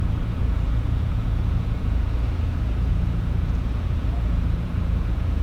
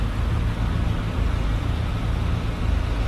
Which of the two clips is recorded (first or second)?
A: second